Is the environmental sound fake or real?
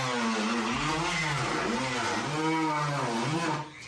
real